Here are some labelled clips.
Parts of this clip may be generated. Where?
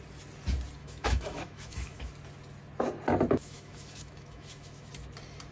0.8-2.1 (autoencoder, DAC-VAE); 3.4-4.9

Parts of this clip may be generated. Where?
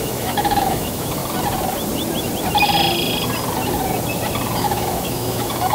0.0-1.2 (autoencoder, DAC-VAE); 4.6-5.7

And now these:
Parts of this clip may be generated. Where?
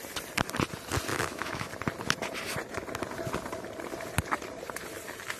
1.1-1.7 (autoencoder, DAC-VAE)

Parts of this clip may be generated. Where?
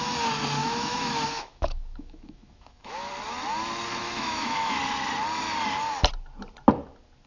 0.6-3.1 (autoencoder, DAC-VAE); 4.0-4.8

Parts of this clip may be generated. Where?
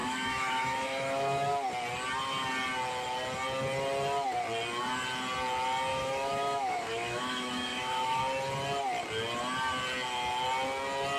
0.0-1.5 (autoencoder, DAC-VAE); 5.9-8.2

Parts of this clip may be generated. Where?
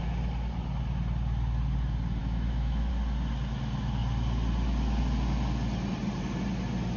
2.2-2.9 (autoencoder, DAC-VAE)